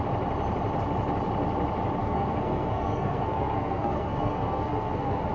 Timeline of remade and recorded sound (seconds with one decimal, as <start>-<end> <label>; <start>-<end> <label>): 0.0-2.0 recorded; 2.0-5.3 remade